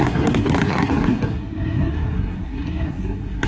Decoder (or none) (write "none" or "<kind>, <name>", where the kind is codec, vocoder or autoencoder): codec, SNAC